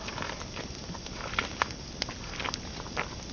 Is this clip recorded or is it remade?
recorded